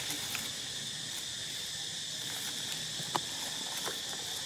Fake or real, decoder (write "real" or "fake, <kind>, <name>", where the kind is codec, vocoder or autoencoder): real